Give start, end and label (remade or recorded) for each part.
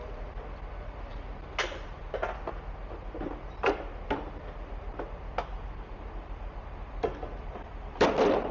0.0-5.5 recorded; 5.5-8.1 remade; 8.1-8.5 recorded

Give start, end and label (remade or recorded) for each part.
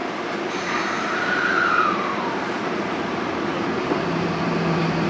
0.0-1.8 remade; 1.8-3.5 recorded; 3.5-5.1 remade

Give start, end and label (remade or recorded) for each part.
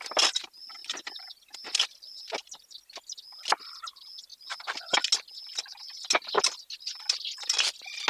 0.0-8.1 recorded